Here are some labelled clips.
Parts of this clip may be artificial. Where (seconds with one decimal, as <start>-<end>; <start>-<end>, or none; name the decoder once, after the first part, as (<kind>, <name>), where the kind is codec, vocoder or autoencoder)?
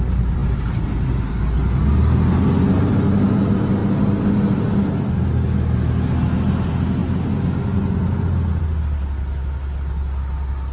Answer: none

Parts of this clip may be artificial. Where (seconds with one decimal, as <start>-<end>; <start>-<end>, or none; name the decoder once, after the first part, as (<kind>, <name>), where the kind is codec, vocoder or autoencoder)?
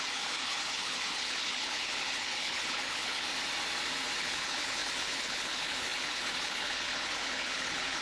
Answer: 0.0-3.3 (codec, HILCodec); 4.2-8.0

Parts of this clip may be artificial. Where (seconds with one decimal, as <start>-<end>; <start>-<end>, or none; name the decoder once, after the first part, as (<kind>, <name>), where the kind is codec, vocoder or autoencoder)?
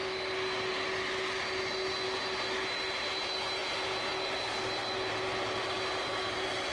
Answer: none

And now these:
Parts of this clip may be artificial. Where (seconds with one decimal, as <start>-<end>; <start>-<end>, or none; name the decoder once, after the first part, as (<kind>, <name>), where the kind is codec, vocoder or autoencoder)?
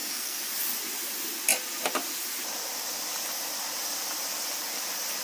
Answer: 0.0-0.5 (codec, SNAC)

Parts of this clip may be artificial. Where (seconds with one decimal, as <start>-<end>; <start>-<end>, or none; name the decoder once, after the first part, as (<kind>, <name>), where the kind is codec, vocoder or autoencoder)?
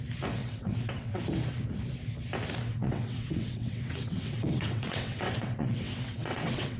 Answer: 0.4-1.2 (vocoder, WaveNeXt); 2.7-6.8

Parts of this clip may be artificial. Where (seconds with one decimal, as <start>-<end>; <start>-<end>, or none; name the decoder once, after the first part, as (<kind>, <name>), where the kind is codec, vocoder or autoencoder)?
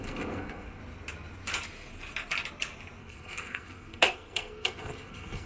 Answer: 0.0-0.8 (codec, SNAC); 3.0-5.5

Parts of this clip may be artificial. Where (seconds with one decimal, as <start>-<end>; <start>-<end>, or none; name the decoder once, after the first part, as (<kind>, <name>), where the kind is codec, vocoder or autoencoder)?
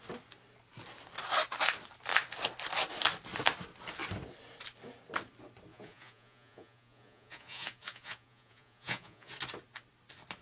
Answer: 5.7-9.3 (vocoder, Vocos)